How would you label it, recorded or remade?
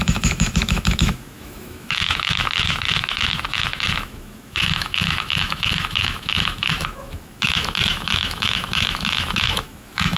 remade